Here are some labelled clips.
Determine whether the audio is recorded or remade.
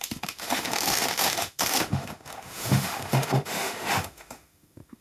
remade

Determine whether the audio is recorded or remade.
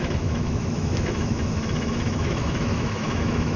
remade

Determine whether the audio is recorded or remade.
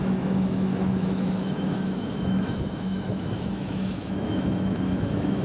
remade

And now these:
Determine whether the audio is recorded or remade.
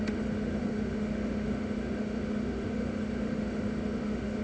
remade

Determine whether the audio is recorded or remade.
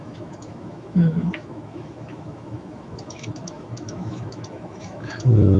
remade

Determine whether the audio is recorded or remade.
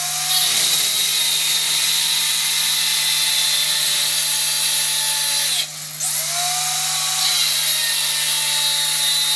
recorded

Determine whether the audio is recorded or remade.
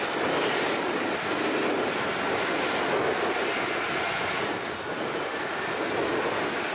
recorded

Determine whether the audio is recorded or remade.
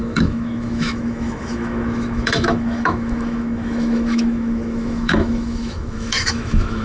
remade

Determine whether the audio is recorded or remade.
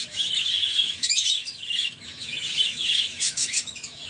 remade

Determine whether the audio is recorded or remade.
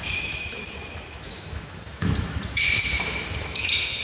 remade